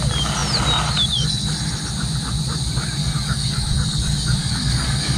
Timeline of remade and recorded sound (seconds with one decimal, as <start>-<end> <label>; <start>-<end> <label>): 0.0-3.0 recorded; 3.0-5.2 remade